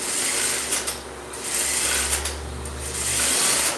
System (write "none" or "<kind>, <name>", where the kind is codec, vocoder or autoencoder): none